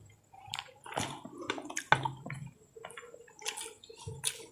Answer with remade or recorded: recorded